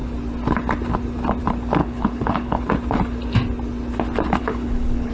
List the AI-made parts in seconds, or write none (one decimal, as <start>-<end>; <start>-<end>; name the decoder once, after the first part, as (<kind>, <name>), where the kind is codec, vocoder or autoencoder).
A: 1.8-2.6 (codec, HILCodec); 4.4-5.1

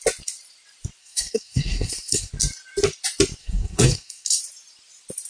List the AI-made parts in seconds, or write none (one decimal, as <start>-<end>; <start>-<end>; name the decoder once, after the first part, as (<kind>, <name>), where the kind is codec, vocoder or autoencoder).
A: 1.0-2.3 (codec, SNAC); 3.4-4.4